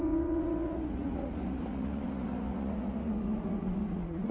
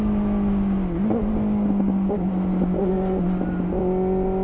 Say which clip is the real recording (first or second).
second